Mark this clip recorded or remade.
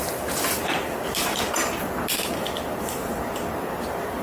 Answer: remade